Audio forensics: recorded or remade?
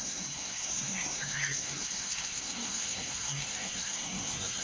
remade